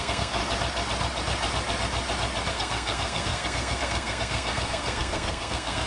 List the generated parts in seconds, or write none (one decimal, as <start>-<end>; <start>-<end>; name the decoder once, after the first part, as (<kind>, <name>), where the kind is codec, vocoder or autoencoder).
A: 0.0-0.4 (codec, SNAC); 2.5-5.9